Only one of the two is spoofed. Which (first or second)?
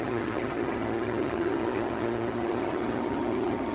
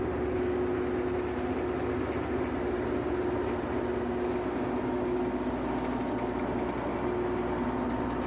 first